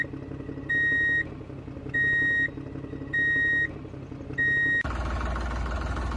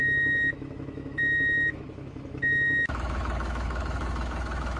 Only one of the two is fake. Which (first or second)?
second